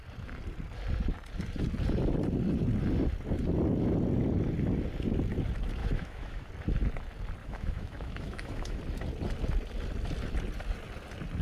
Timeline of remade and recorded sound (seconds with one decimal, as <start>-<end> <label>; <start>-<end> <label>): 0.0-5.8 recorded; 5.8-6.5 remade; 6.5-7.4 recorded; 7.4-8.8 remade; 8.8-11.4 recorded